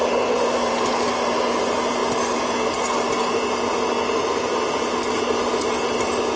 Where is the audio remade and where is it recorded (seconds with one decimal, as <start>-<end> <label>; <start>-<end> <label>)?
0.0-6.4 recorded